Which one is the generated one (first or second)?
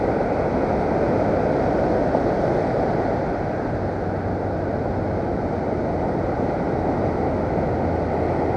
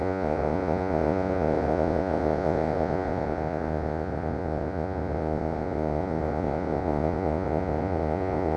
second